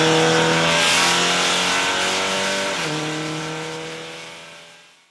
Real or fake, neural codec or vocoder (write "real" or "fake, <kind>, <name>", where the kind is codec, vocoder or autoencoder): real